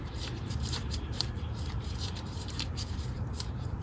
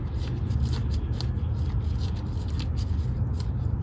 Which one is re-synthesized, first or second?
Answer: first